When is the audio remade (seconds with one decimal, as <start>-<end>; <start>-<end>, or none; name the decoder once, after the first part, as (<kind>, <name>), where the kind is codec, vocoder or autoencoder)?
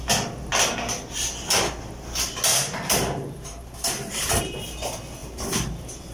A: 2.5-4.4 (vocoder, BigVGAN v2); 5.2-6.1